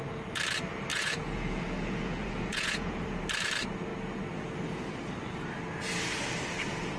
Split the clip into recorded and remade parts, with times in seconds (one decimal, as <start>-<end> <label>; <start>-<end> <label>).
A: 0.0-0.9 recorded; 0.9-3.2 remade; 3.2-7.0 recorded